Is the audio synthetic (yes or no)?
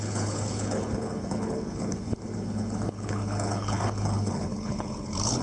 yes